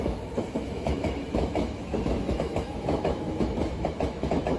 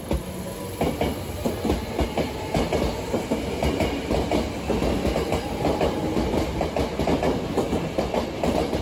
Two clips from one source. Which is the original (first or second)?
second